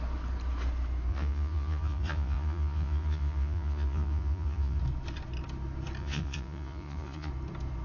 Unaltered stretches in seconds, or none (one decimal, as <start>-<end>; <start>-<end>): 0.0-1.1; 4.8-6.0; 7.3-7.8